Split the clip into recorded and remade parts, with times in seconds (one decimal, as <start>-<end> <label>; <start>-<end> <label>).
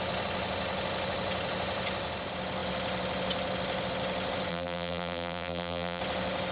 0.0-4.5 recorded; 4.5-6.0 remade; 6.0-6.5 recorded